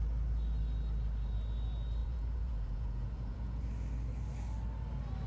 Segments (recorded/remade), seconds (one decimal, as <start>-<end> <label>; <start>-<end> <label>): 0.0-2.0 recorded; 2.0-3.6 remade; 3.6-5.3 recorded